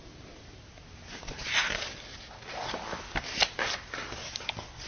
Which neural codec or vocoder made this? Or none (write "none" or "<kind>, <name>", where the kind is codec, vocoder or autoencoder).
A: none